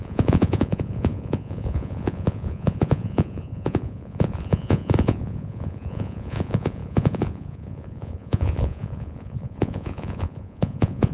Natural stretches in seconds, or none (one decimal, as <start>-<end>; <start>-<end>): none